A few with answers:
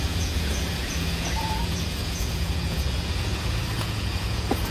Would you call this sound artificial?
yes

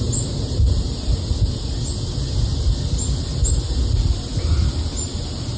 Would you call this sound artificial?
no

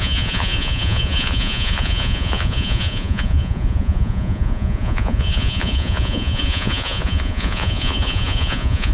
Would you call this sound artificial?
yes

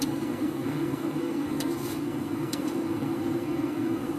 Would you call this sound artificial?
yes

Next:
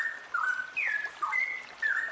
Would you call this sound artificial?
no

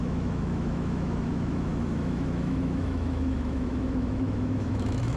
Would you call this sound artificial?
yes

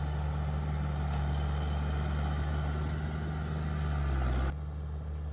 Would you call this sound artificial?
no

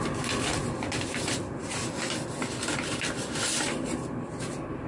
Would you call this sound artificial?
no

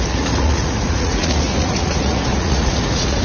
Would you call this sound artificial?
yes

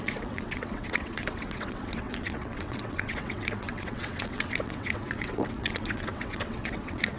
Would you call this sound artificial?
yes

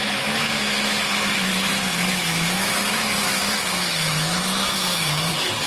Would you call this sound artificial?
yes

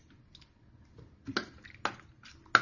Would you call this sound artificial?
no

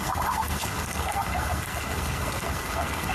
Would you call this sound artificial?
yes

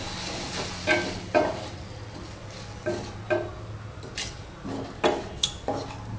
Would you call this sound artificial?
no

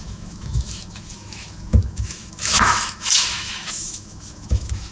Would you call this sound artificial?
yes